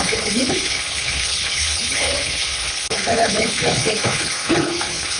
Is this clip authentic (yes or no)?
no